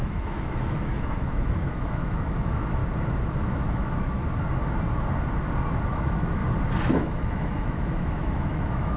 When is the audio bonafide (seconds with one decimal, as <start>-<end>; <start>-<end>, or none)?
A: 2.8-3.4; 4.2-5.9; 6.4-6.9